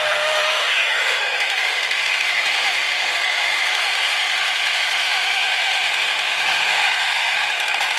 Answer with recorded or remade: remade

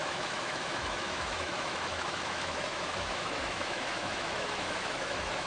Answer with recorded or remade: remade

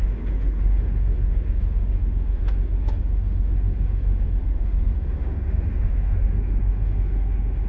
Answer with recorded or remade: remade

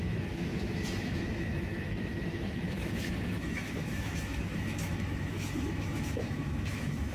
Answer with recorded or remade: remade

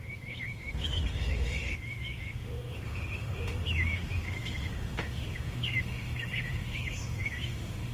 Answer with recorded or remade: remade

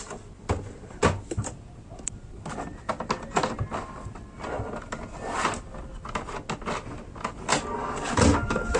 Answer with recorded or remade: recorded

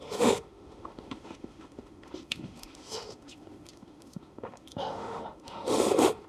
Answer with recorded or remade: remade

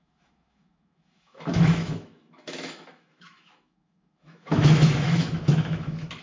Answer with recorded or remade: remade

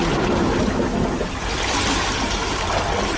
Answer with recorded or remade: recorded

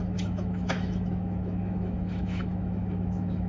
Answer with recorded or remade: remade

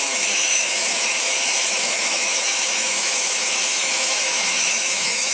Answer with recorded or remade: remade